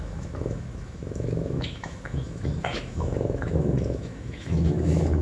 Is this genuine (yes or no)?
no